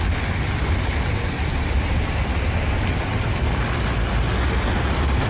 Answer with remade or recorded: recorded